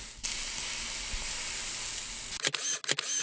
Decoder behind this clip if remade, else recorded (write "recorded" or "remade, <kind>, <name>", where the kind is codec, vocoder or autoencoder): recorded